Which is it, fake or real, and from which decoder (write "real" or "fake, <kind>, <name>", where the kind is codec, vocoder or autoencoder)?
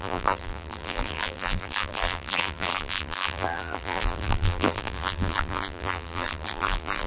fake, vocoder, BigVGAN v2